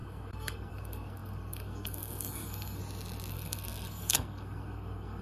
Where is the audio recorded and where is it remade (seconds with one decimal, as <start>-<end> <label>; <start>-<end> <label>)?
0.0-2.8 remade; 2.8-3.3 recorded; 3.3-5.2 remade